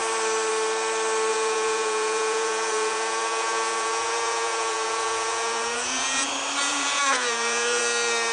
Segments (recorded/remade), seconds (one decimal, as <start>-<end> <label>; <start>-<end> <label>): 0.0-1.3 recorded; 1.3-6.3 remade; 6.3-6.7 recorded; 6.7-7.8 remade; 7.8-8.3 recorded